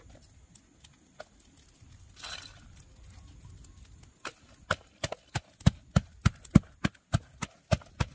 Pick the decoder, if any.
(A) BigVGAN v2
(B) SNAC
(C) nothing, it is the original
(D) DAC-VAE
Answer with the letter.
C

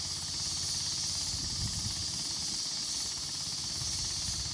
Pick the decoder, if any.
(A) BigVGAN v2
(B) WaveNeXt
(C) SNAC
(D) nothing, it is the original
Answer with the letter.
D